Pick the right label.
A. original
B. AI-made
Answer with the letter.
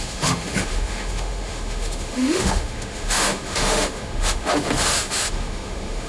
B